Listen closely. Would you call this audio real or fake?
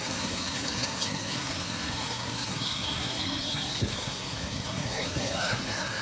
fake